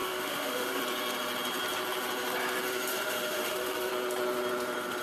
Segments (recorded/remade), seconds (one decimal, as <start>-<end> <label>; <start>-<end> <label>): 0.0-0.8 remade; 0.8-2.9 recorded; 2.9-3.9 remade; 3.9-5.0 recorded